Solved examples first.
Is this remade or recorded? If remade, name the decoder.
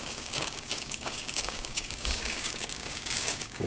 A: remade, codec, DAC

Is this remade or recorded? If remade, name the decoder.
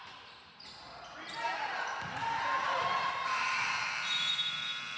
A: remade, vocoder, BigVGAN v2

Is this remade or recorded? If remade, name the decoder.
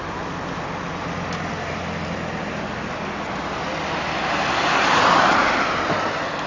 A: recorded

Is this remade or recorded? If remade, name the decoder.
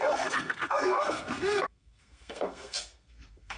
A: remade, codec, SNAC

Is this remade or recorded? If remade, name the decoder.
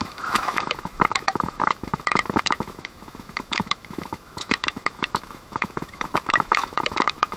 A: remade, autoencoder, DAC-VAE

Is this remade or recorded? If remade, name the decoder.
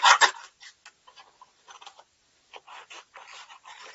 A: recorded